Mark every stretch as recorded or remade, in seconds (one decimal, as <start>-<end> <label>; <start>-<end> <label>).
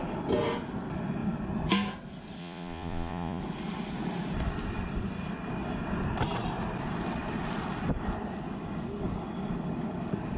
0.0-2.4 recorded; 2.4-3.4 remade; 3.4-10.4 recorded